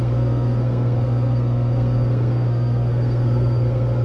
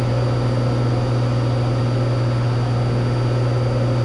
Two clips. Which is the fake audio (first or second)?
first